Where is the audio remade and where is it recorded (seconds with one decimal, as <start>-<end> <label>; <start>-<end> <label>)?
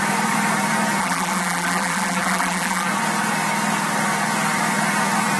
0.0-1.0 recorded; 1.0-2.9 remade; 2.9-5.4 recorded